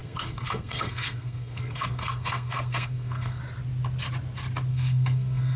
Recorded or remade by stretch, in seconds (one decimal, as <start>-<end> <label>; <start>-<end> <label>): 0.0-3.4 remade; 3.4-4.7 recorded; 4.7-5.6 remade

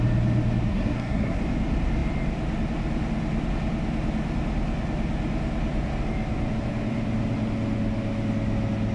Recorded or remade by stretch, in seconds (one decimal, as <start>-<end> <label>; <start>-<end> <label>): 0.0-0.7 recorded; 0.7-1.4 remade; 1.4-8.9 recorded

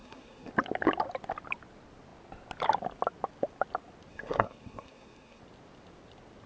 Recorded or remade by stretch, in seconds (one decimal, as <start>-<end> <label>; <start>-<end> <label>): 0.0-0.5 remade; 0.5-4.1 recorded; 4.1-5.4 remade; 5.4-6.5 recorded

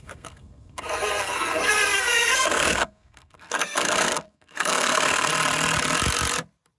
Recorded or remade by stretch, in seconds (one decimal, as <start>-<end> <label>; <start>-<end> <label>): 0.0-5.3 remade; 5.3-6.8 recorded